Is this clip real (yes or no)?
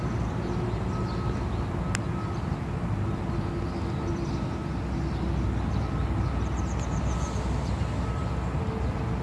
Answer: yes